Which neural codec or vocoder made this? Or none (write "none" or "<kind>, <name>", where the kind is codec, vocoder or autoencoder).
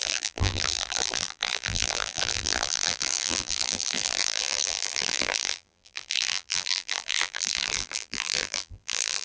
vocoder, BigVGAN v2